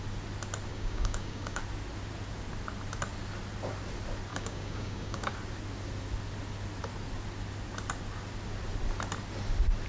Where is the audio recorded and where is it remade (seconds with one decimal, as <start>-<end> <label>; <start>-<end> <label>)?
0.0-0.7 recorded; 0.7-1.6 remade; 1.6-4.3 recorded; 4.3-5.3 remade; 5.3-9.9 recorded